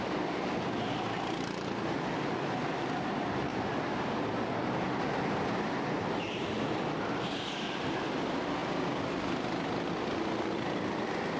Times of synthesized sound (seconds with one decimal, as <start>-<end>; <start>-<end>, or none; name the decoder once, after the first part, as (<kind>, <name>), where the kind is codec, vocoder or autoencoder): 0.0-3.5 (vocoder, BigVGAN v2); 4.7-11.4